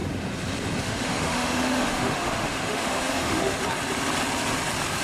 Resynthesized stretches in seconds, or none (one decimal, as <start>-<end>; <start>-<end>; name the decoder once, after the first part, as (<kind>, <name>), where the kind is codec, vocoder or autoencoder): 0.8-3.6 (autoencoder, DAC-VAE)